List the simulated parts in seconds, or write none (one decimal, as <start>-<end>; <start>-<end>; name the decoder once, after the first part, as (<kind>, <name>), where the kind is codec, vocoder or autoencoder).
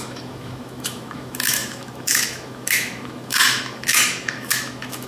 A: 0.0-5.1 (autoencoder, DAC-VAE)